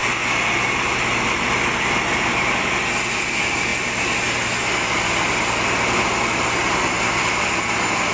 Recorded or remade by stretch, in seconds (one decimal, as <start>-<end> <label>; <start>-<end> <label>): 0.0-8.1 recorded